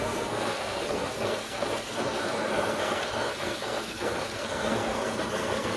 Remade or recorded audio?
remade